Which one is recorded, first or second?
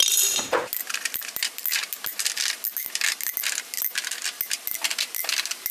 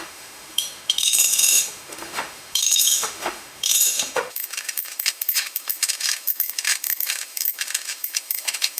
first